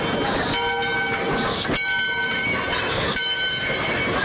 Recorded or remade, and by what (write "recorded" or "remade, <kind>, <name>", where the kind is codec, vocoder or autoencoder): recorded